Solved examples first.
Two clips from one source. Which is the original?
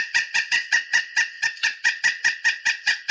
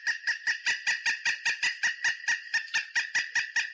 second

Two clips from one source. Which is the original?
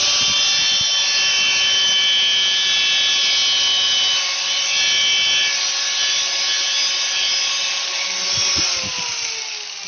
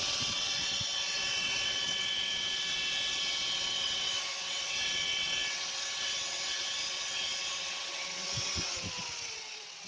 first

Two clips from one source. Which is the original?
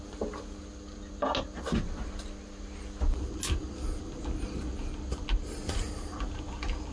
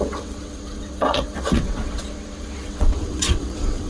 first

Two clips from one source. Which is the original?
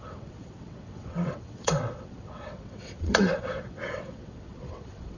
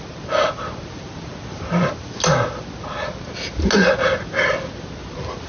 second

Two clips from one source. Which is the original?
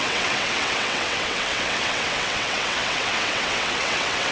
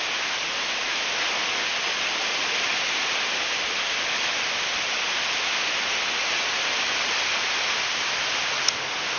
second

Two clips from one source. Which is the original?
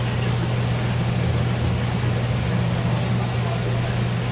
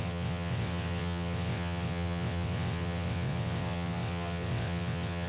first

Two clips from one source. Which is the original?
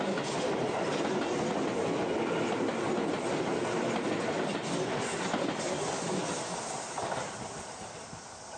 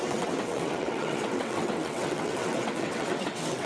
first